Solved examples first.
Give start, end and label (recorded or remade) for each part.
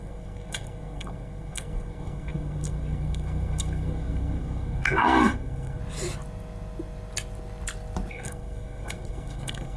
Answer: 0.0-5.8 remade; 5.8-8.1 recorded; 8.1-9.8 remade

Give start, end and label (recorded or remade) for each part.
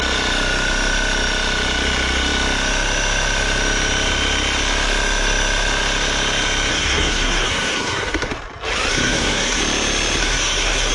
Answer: 0.0-6.7 recorded; 6.7-8.3 remade; 8.3-8.9 recorded; 8.9-9.6 remade; 9.6-10.2 recorded; 10.2-10.9 remade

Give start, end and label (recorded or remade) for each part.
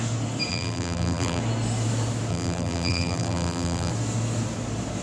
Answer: 0.0-0.5 recorded; 0.5-1.4 remade; 1.4-2.3 recorded; 2.3-3.9 remade; 3.9-5.0 recorded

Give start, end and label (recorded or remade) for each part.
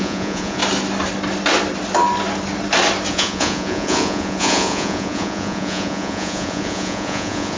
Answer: 0.0-0.6 remade; 0.6-3.1 recorded; 3.1-7.6 remade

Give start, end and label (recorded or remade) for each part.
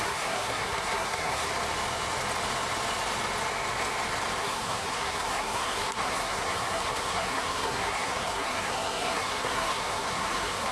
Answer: 0.0-1.5 remade; 1.5-4.4 recorded; 4.4-10.7 remade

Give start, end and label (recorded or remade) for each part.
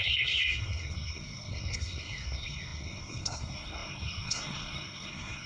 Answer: 0.0-5.5 remade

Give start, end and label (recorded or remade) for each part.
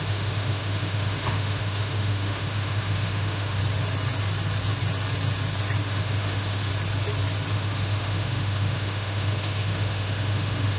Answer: 0.0-3.6 remade; 3.6-5.8 recorded; 5.8-6.7 remade; 6.7-7.5 recorded; 7.5-10.8 remade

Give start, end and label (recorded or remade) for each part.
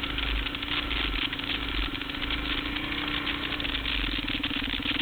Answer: 0.0-5.0 recorded